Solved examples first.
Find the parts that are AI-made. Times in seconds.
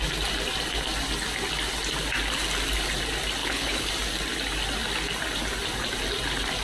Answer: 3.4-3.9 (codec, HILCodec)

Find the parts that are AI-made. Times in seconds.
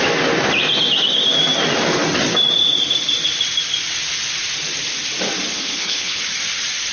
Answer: 5.5-6.2 (codec, HILCodec)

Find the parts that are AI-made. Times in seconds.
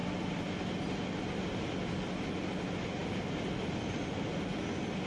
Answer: none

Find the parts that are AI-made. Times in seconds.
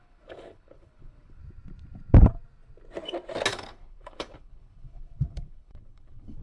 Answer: 0.0-1.4 (codec, HILCodec); 3.5-6.4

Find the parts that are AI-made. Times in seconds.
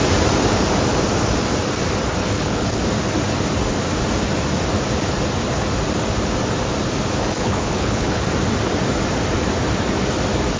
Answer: 2.2-2.8 (codec, HILCodec); 7.2-8.2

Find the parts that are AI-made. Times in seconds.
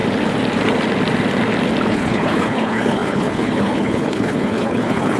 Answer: 1.9-5.2 (codec, HILCodec)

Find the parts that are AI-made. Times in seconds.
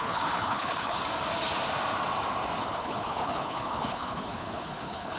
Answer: 0.0-1.0 (codec, HILCodec); 2.6-5.2